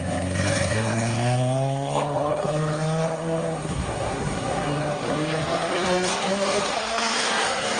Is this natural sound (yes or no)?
no